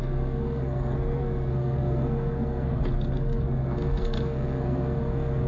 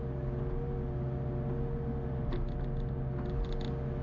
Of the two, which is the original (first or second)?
second